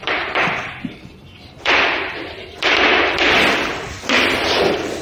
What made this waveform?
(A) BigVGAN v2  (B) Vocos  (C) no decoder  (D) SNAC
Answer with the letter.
A